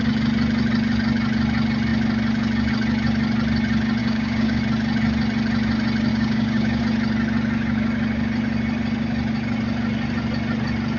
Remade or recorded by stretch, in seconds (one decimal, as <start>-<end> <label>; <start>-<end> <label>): 0.0-4.0 recorded; 4.0-4.6 remade; 4.6-6.1 recorded; 6.1-6.8 remade; 6.8-11.0 recorded